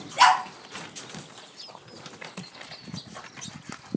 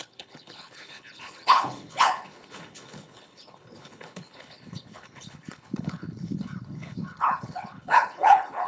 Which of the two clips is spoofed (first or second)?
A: second